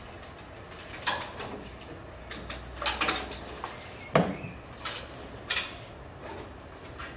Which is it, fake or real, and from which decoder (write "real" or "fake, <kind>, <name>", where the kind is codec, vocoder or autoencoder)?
real